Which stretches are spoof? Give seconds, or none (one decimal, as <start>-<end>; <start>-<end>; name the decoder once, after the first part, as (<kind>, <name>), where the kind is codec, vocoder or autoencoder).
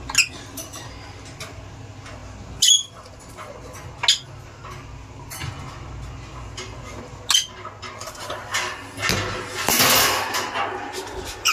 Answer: none